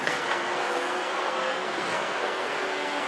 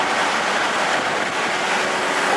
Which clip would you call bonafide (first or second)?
second